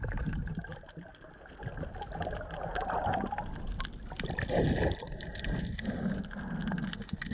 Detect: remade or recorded recorded